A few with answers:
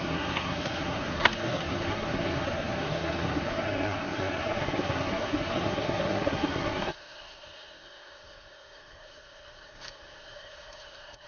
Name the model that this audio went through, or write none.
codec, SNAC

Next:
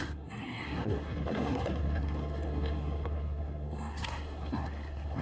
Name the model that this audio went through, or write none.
codec, SNAC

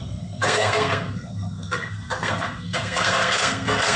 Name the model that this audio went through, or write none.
codec, SNAC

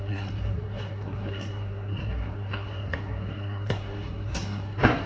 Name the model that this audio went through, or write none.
codec, SNAC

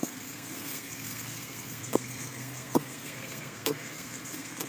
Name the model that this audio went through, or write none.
codec, SNAC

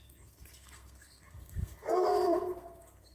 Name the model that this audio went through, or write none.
codec, SNAC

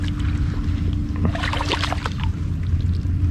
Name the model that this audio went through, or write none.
none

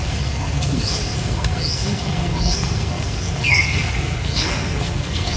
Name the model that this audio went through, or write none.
codec, SNAC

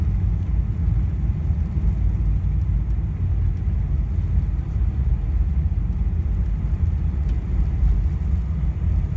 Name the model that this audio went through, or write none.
none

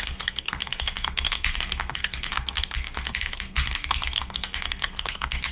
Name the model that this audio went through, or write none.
codec, SNAC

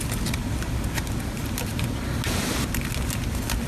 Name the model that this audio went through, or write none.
none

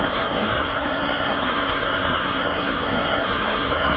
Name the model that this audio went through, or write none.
codec, SNAC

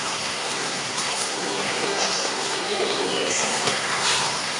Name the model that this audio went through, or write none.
codec, SNAC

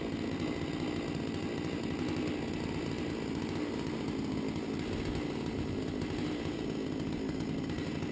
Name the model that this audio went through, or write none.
none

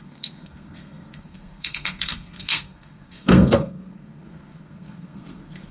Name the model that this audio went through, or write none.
codec, SNAC